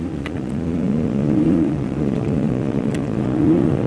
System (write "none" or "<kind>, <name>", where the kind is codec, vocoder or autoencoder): vocoder, Vocos